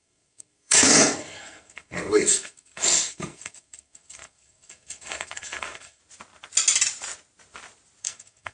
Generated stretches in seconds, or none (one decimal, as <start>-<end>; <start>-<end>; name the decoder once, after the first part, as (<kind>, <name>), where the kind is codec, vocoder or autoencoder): 0.0-6.0 (codec, SNAC); 8.0-8.5